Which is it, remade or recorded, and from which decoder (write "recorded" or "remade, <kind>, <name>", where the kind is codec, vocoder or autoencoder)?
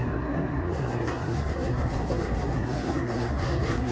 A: remade, codec, SNAC